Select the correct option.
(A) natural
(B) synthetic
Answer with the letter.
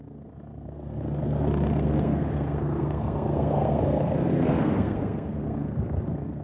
B